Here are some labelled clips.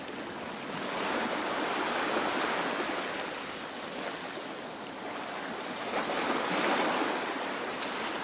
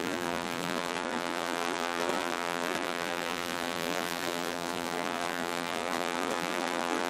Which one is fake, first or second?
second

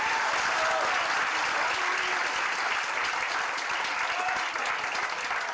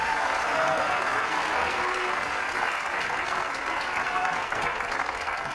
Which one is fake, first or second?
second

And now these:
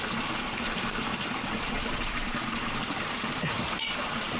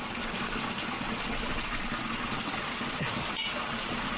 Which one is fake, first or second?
first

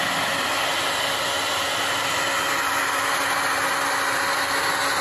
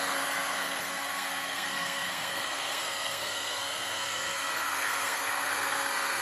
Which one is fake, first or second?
second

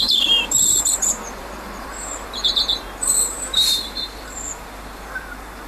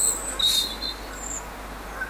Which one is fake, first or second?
first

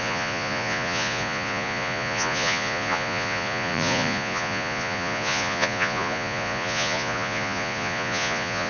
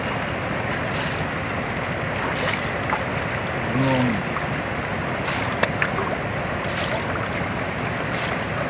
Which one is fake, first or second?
first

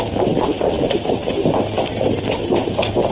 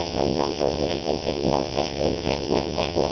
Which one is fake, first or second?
second